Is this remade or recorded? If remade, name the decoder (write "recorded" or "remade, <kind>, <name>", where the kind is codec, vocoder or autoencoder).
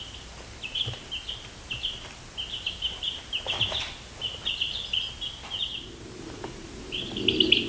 recorded